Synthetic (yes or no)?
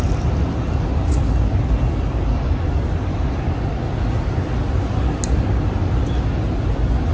no